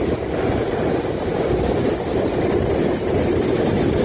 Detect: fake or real real